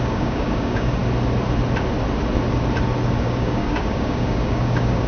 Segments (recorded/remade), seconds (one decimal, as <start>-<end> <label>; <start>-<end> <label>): 0.0-1.0 remade; 1.0-3.2 recorded; 3.2-5.1 remade

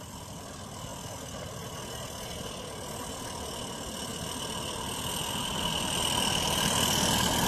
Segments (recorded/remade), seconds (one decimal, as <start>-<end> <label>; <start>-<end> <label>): 0.0-7.5 recorded

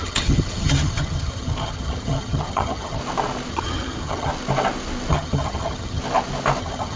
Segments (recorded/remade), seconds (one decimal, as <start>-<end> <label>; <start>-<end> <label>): 0.0-3.0 remade; 3.0-3.5 recorded; 3.5-4.3 remade; 4.3-5.1 recorded; 5.1-6.0 remade; 6.0-6.6 recorded; 6.6-7.0 remade